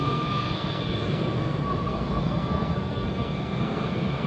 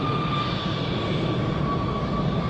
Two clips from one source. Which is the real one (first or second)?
second